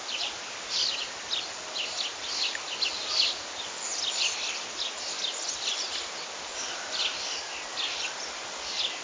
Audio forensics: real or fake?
real